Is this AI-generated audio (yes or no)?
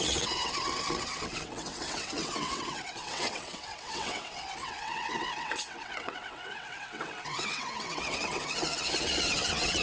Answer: yes